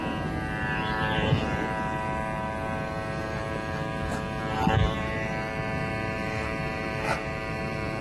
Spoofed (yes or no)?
yes